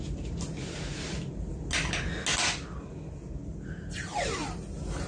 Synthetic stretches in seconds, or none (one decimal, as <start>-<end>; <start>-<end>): none